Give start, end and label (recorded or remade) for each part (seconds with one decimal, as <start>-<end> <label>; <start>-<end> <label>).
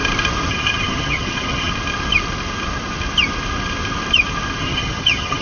0.0-0.5 recorded; 0.5-1.7 remade; 1.7-4.6 recorded; 4.6-5.4 remade